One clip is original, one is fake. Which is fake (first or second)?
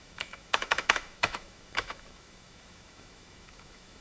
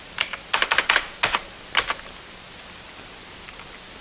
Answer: first